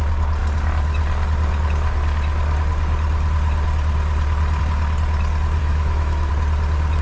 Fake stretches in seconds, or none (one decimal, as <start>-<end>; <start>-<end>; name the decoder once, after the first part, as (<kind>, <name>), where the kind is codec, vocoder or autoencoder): 5.6-6.3 (autoencoder, DAC-VAE)